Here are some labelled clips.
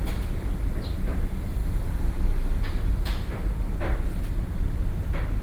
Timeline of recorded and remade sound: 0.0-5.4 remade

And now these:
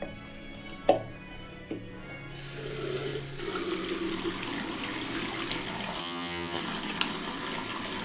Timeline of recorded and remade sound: 0.0-6.0 recorded; 6.0-6.6 remade; 6.6-8.0 recorded

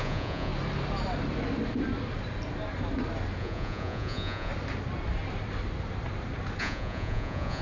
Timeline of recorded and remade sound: 0.0-0.5 remade; 0.5-3.4 recorded; 3.4-4.5 remade; 4.5-6.6 recorded; 6.6-7.6 remade